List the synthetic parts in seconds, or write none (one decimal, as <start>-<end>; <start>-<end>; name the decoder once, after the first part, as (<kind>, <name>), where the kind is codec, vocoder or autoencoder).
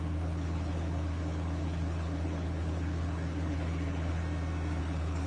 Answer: 0.0-4.2 (codec, HILCodec); 4.8-5.3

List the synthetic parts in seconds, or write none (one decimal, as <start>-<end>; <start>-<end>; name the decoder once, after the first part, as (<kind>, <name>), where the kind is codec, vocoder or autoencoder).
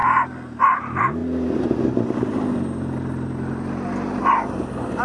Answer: none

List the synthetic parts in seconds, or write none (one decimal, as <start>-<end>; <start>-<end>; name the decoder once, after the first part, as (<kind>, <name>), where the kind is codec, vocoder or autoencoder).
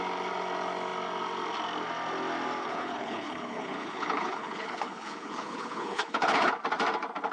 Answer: 2.6-6.5 (codec, HILCodec)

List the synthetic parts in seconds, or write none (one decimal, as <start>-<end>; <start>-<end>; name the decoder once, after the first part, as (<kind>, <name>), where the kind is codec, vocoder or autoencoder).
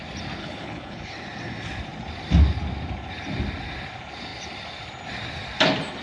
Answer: 0.4-1.1 (codec, HILCodec)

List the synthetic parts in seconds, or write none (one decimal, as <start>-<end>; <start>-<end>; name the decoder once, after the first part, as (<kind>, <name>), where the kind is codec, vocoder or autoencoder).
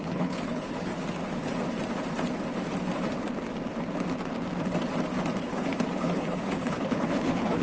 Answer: 0.0-0.9 (codec, HILCodec); 5.4-7.6